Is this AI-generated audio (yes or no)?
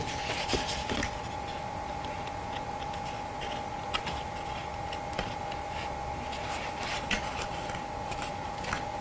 no